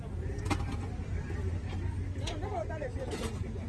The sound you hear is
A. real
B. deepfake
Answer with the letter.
A